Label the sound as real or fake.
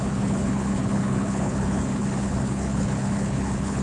fake